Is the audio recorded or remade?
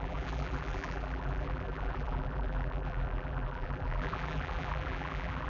remade